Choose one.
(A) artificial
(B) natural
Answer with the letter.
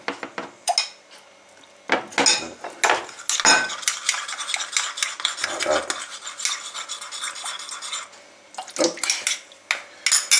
B